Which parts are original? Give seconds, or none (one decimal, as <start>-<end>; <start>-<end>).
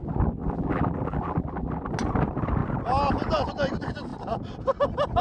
0.0-0.4; 1.9-5.2